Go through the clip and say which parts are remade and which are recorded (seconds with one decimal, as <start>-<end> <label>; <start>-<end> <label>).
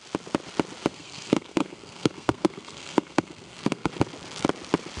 0.0-0.9 recorded; 0.9-3.9 remade; 3.9-5.0 recorded